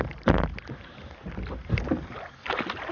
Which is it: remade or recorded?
recorded